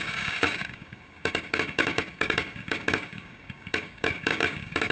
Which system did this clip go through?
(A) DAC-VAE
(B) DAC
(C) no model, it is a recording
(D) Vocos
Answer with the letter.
B